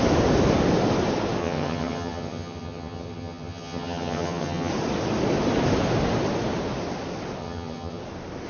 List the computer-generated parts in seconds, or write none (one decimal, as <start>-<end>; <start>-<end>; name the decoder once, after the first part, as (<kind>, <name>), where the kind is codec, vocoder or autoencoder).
1.4-4.7 (vocoder, HiFi-GAN); 7.4-8.0